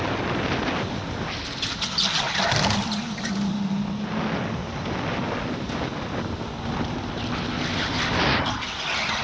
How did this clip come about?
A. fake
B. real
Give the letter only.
B